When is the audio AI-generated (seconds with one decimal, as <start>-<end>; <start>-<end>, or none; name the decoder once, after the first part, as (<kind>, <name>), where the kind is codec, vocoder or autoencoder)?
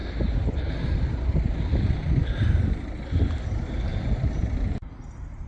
0.0-3.3 (vocoder, BigVGAN v2); 3.9-4.9